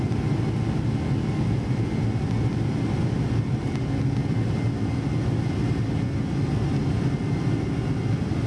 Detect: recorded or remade recorded